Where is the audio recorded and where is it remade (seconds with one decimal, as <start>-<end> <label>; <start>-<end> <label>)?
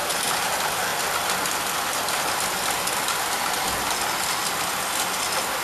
0.0-5.6 recorded